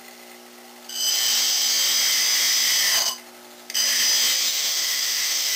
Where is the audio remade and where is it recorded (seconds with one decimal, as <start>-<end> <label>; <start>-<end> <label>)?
0.0-4.5 recorded; 4.5-5.6 remade